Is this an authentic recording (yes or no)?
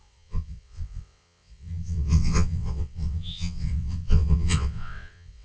no